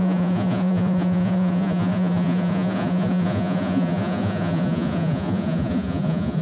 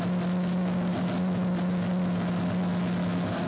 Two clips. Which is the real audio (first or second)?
second